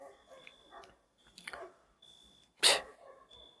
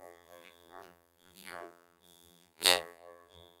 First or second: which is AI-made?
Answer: second